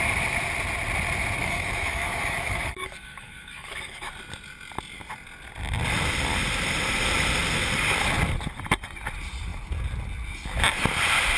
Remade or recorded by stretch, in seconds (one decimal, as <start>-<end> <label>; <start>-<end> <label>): 0.0-1.4 recorded; 1.4-4.1 remade; 4.1-11.4 recorded